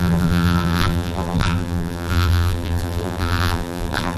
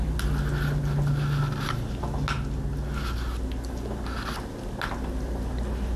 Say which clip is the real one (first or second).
second